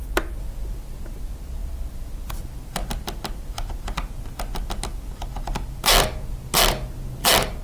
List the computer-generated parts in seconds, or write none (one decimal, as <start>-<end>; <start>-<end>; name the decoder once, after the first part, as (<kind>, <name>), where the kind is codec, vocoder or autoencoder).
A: none